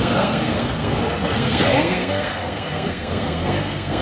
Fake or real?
fake